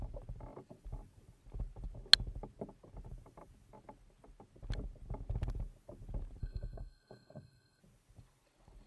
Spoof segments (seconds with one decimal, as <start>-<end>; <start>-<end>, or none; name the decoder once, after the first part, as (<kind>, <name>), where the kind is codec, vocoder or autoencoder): 6.4-7.8 (codec, SNAC)